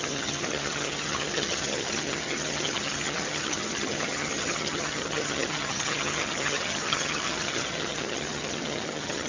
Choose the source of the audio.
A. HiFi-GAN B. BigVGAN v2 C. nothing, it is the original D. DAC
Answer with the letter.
A